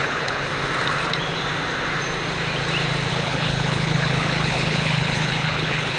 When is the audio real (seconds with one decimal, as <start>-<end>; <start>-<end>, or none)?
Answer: 0.5-3.1